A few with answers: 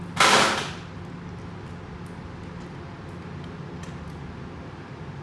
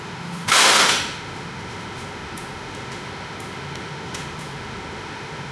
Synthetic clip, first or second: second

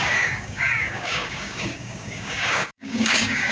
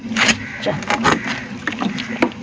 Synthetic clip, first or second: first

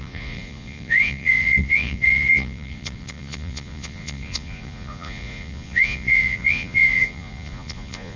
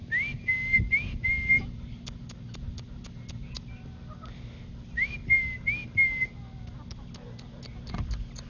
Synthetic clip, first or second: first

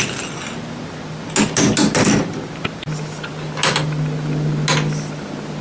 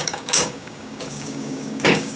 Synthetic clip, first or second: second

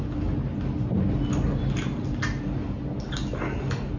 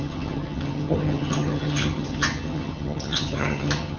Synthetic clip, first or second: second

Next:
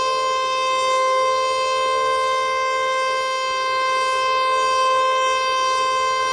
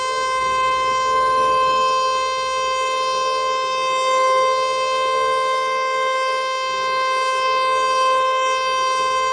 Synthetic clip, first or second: second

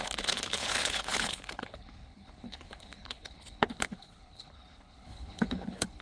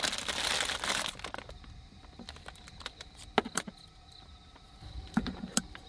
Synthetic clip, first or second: first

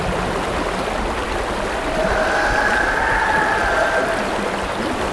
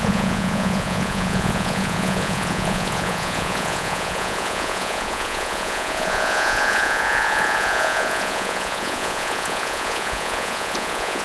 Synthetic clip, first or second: second